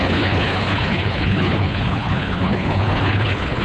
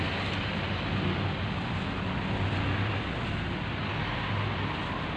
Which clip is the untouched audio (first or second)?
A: second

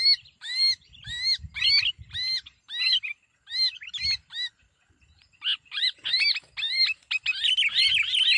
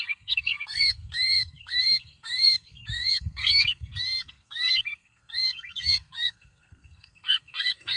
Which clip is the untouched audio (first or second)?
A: first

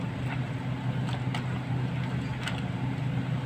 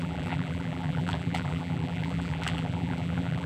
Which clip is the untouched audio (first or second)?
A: first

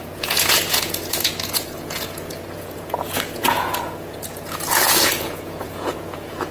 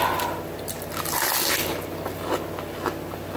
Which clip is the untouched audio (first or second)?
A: second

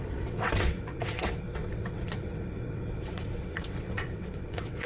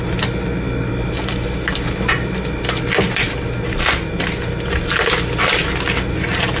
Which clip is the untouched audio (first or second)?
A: second